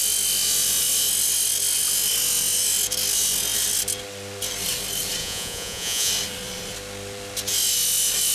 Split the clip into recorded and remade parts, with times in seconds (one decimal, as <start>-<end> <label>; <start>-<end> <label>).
0.0-5.2 recorded; 5.2-6.1 remade; 6.1-8.3 recorded